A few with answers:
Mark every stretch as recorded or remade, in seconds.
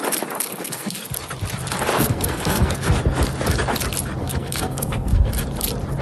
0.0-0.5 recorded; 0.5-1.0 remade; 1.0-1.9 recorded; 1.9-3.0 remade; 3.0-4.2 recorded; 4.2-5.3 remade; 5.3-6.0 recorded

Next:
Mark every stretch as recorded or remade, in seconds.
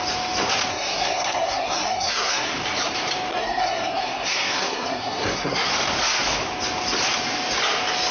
0.0-0.7 recorded; 0.7-2.5 remade; 2.5-3.3 recorded; 3.3-5.7 remade; 5.7-8.1 recorded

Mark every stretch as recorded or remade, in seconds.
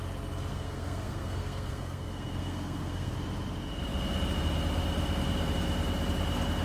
0.0-0.5 recorded; 0.5-3.1 remade; 3.1-6.6 recorded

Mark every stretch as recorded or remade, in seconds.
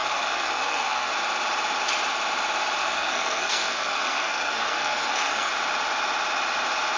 0.0-1.1 remade; 1.1-2.8 recorded; 2.8-5.5 remade; 5.5-7.0 recorded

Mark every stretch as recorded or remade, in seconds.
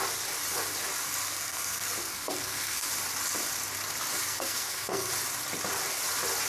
0.0-1.2 recorded; 1.2-2.9 remade; 2.9-4.2 recorded; 4.2-5.1 remade; 5.1-6.5 recorded